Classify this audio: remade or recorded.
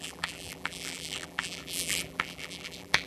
remade